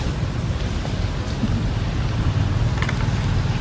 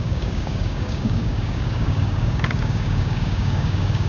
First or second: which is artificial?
second